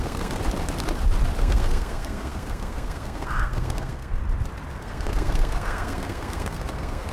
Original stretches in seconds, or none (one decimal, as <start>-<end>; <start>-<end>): 0.4-1.4; 4.2-4.8